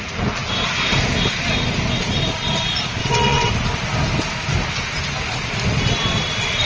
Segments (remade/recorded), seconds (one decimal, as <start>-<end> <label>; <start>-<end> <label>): 0.0-3.0 recorded; 3.0-3.5 remade; 3.5-6.6 recorded